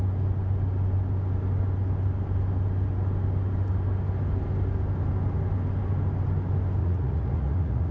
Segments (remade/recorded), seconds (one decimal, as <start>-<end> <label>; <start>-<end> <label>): 0.0-6.8 recorded; 6.8-7.9 remade